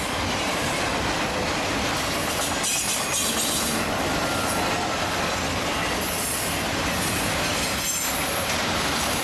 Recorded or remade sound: recorded